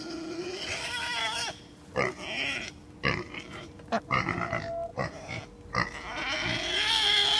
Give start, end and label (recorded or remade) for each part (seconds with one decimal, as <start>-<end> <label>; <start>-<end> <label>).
0.0-3.5 recorded; 3.5-4.5 remade; 4.5-4.9 recorded; 4.9-5.4 remade; 5.4-7.4 recorded